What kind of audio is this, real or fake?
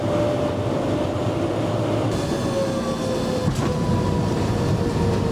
real